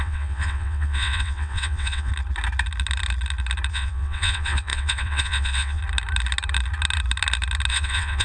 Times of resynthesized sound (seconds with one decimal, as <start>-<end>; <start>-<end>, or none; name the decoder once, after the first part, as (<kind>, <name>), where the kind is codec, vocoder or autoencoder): 0.0-2.1 (vocoder, WaveNeXt); 3.7-5.8; 7.7-8.2